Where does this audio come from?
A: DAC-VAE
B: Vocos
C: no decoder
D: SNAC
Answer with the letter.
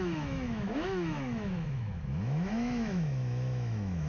A